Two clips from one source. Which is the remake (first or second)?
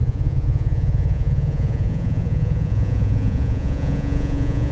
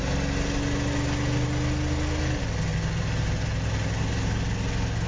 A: first